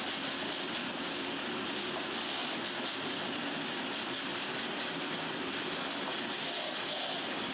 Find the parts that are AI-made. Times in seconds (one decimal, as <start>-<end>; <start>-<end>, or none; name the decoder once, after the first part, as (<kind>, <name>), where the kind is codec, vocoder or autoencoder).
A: none